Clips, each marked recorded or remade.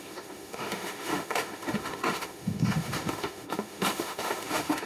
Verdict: remade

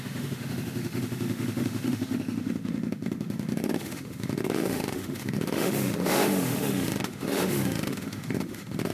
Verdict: remade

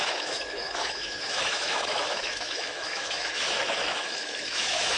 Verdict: remade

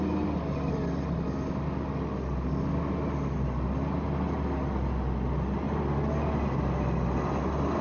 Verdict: recorded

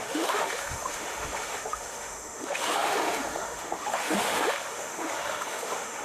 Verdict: remade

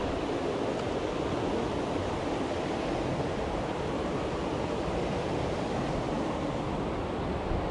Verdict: recorded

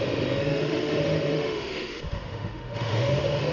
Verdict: remade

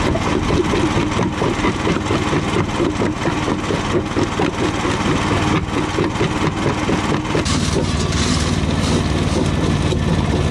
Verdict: recorded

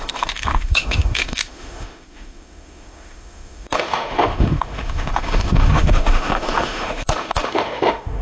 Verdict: remade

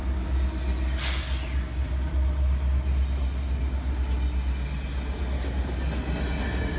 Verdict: recorded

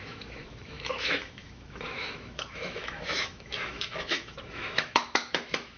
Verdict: remade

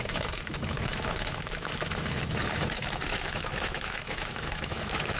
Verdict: remade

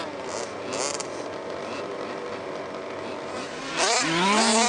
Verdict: recorded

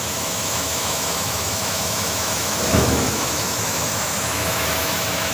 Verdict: remade